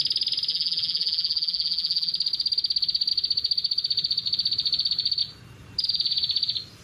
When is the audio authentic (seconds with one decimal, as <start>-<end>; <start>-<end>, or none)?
0.0-0.5; 2.1-6.8